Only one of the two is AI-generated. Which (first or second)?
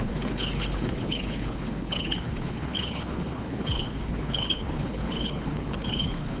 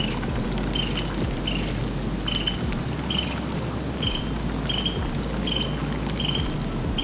first